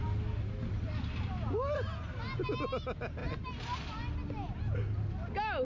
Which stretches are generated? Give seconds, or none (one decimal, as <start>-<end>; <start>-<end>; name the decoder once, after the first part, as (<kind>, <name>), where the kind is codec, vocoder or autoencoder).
none